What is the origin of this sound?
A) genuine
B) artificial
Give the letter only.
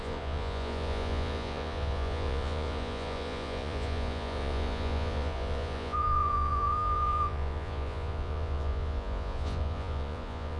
B